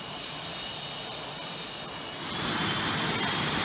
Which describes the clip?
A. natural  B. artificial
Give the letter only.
A